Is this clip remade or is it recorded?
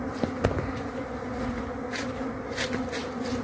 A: recorded